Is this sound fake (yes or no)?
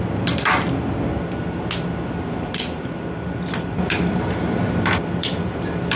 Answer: no